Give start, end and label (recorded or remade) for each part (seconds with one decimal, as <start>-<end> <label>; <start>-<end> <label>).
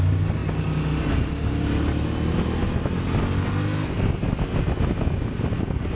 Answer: 0.0-0.4 remade; 0.4-1.0 recorded; 1.0-2.6 remade; 2.6-5.2 recorded; 5.2-5.9 remade